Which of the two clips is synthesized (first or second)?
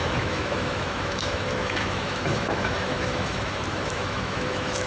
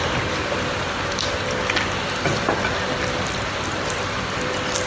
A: first